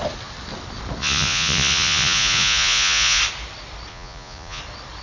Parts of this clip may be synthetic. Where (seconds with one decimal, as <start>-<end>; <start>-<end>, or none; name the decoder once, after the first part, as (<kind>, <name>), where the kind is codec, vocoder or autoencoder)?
1.0-3.2 (vocoder, Vocos); 3.9-4.6